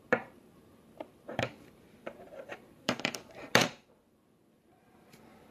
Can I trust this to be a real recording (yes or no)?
no